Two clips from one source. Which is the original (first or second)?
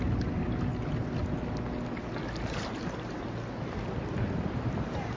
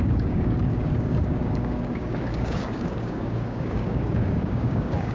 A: first